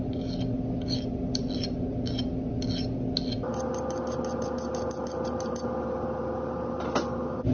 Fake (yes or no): no